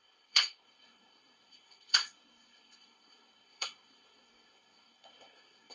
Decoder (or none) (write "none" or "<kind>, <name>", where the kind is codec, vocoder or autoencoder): codec, SNAC